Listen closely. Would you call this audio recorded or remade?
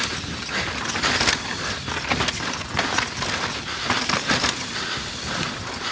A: recorded